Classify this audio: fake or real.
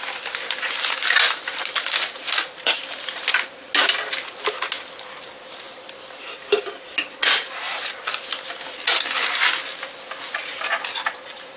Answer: real